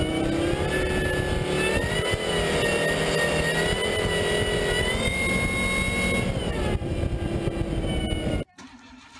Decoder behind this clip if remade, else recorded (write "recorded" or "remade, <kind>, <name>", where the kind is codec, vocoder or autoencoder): recorded